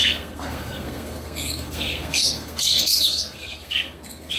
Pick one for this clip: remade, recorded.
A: remade